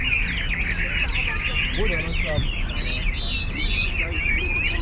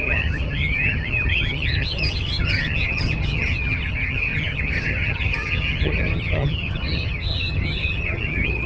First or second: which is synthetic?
second